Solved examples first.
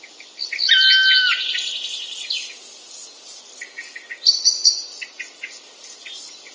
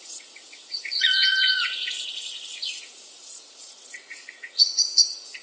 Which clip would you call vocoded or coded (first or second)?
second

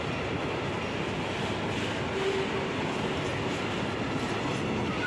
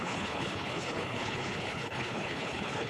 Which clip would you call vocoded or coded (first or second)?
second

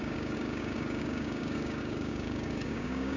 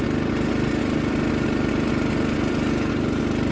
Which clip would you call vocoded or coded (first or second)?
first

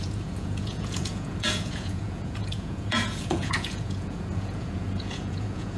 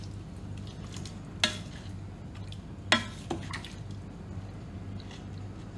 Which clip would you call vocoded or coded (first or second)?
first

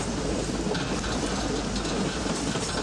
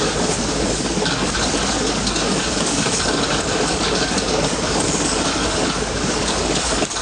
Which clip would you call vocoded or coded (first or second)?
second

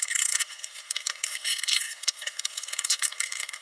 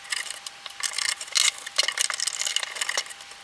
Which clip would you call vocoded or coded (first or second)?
first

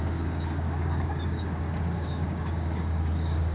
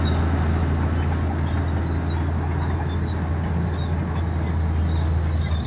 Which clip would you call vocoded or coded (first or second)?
first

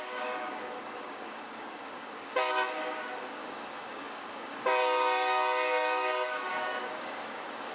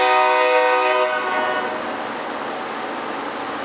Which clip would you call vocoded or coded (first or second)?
first